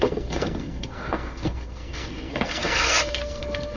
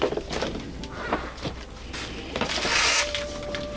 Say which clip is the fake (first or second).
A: first